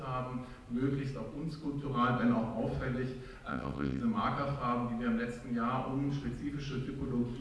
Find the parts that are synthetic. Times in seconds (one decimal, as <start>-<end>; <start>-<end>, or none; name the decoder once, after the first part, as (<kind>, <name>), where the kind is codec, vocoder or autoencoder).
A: 3.5-4.0 (vocoder, WaveNeXt)